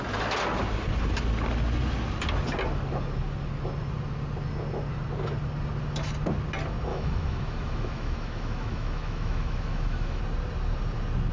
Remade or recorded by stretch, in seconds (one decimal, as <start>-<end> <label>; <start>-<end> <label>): 0.0-6.9 recorded; 6.9-10.2 remade; 10.2-11.3 recorded